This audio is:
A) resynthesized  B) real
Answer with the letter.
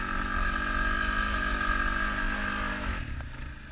B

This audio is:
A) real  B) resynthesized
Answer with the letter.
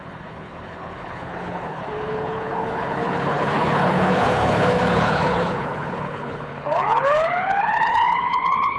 B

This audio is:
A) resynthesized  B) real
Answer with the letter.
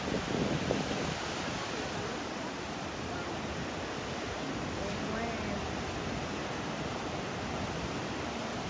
B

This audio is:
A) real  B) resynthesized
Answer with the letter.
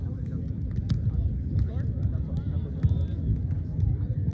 A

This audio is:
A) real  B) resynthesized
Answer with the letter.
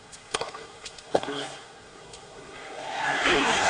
B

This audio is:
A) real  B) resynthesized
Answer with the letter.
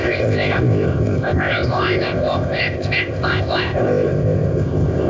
B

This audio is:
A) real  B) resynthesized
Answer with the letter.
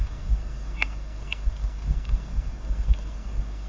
B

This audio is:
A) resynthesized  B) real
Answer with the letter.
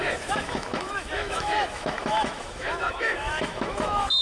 A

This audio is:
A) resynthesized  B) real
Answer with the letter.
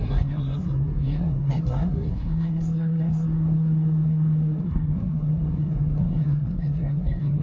A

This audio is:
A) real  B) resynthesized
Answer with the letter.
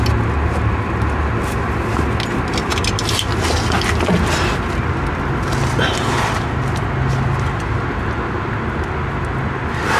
A